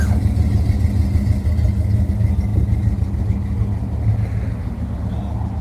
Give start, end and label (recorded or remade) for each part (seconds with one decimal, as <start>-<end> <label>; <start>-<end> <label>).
0.0-5.6 recorded